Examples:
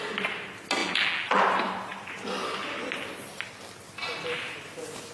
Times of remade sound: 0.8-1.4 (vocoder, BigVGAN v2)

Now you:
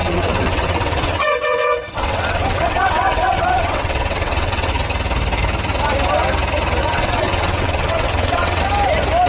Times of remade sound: 0.0-4.7 (vocoder, WaveNeXt); 6.8-8.6

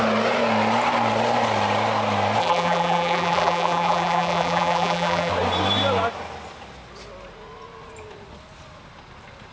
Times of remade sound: 2.4-5.3 (vocoder, BigVGAN v2)

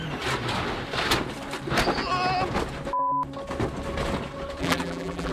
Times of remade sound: 4.6-5.3 (vocoder, BigVGAN v2)